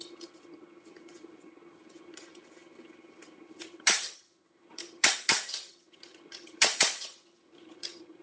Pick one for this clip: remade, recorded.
remade